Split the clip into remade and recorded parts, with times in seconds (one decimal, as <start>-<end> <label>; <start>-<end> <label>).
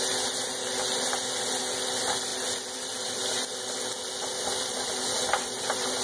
0.0-6.0 recorded